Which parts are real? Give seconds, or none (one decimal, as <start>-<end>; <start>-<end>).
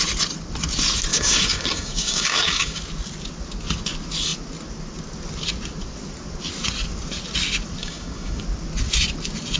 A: 0.0-1.1; 2.8-7.8; 8.4-9.6